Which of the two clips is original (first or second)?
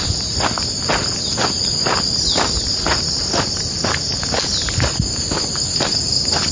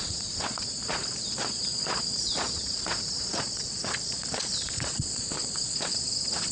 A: first